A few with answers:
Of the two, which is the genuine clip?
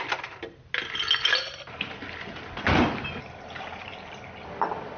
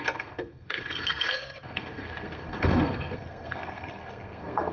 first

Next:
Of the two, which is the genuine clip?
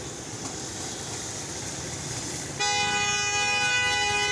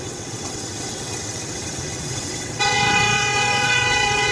first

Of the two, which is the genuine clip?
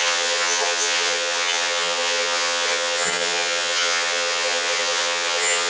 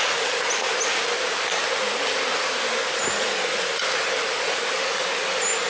second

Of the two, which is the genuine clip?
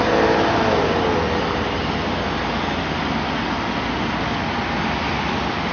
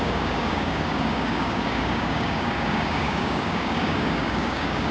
first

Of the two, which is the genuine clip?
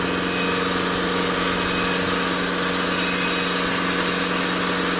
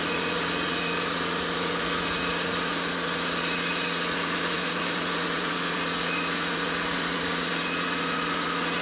first